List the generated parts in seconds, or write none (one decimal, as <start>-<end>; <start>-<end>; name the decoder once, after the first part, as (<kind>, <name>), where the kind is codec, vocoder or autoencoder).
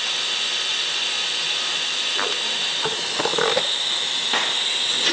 none